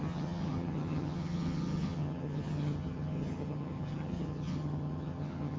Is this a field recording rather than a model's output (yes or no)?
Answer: no